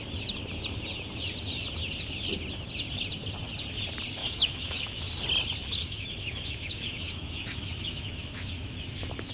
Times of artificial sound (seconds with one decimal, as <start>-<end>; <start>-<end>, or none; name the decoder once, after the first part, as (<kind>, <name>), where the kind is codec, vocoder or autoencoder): 4.2-5.1 (autoencoder, DAC-VAE); 5.6-9.3